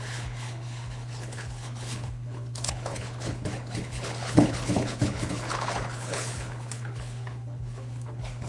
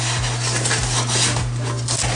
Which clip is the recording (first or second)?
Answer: second